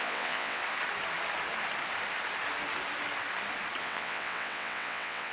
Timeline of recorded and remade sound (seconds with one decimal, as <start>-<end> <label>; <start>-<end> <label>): 0.0-0.6 remade; 0.6-3.8 recorded; 3.8-5.3 remade